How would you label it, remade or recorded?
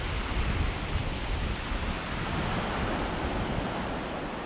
recorded